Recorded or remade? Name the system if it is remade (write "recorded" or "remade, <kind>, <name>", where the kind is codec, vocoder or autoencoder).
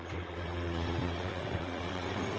remade, vocoder, WaveNeXt